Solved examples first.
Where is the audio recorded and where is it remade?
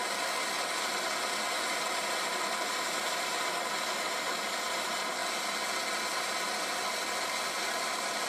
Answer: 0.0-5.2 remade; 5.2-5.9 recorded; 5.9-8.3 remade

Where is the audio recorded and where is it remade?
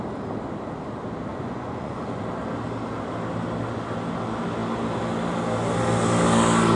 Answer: 0.0-1.3 recorded; 1.3-2.2 remade; 2.2-6.8 recorded